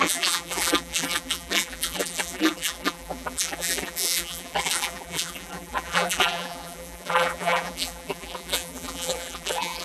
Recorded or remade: remade